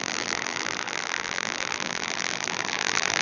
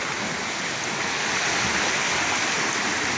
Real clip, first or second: second